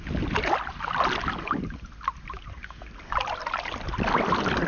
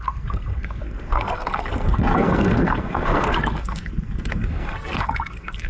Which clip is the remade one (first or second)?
second